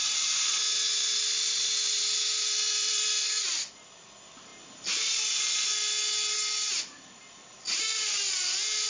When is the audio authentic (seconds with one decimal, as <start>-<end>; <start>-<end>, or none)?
0.0-2.3; 3.7-8.9